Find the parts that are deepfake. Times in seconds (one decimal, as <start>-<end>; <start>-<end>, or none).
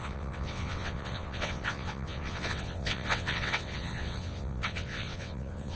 0.0-5.8